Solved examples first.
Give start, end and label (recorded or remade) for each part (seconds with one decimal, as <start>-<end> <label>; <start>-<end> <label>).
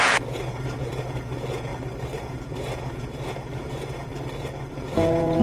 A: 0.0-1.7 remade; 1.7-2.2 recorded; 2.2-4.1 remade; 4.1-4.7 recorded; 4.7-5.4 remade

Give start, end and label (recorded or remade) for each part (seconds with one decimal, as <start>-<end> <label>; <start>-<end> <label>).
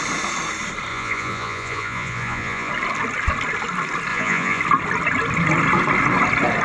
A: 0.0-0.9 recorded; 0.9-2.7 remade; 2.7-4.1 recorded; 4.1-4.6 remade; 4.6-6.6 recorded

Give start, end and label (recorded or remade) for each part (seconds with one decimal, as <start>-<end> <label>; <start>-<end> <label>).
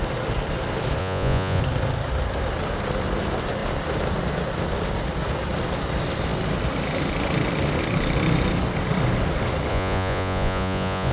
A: 0.0-1.0 recorded; 1.0-1.6 remade; 1.6-9.7 recorded; 9.7-11.1 remade